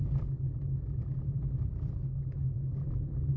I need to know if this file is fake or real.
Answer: real